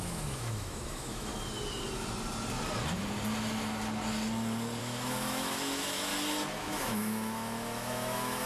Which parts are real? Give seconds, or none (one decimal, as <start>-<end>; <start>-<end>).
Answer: 1.3-4.8; 6.1-6.6